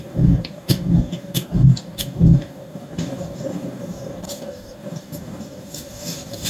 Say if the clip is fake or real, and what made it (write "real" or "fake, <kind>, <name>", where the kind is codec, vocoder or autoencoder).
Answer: fake, codec, DAC